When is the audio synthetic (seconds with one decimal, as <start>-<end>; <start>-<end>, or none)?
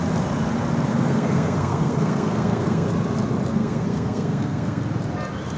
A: 0.9-2.9; 3.5-4.8